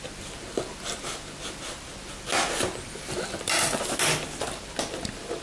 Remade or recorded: recorded